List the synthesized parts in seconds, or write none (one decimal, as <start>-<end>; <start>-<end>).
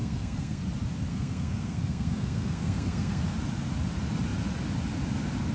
0.0-0.6; 1.1-3.2